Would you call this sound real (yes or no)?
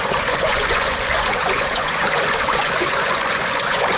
no